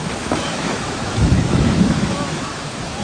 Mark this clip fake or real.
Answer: fake